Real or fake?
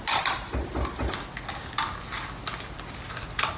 real